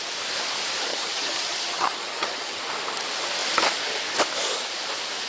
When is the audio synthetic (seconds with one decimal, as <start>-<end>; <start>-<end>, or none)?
0.9-2.6

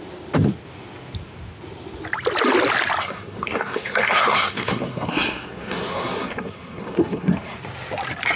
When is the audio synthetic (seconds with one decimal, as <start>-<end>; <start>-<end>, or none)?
3.0-7.6

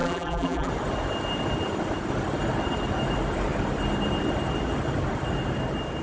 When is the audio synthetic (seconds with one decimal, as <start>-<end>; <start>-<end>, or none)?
0.0-0.7

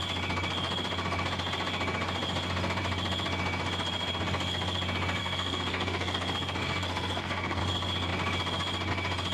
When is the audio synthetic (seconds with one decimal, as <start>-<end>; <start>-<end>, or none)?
5.2-7.6

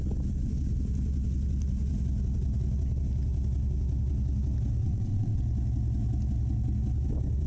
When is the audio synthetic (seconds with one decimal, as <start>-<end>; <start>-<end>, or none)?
4.8-5.4

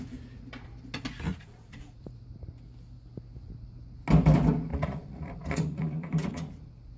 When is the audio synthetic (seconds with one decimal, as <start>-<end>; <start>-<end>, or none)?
1.3-2.0; 4.7-6.5

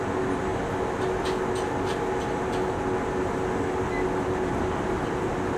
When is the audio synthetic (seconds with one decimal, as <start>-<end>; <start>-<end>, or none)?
none